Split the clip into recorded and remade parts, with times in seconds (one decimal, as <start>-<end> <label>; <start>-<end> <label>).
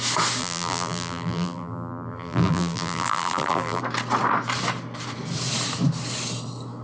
0.0-0.4 recorded; 0.4-3.8 remade; 3.8-6.8 recorded